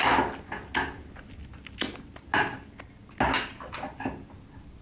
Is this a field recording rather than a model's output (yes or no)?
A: yes